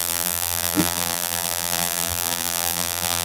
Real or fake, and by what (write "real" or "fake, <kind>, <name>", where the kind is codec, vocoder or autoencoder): fake, vocoder, BigVGAN v2